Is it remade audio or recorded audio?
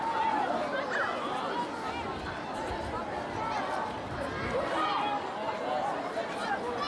recorded